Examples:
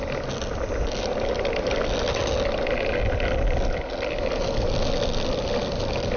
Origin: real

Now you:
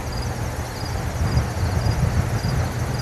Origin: real